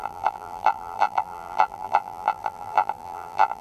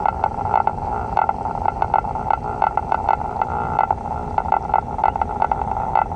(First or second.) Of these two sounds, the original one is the second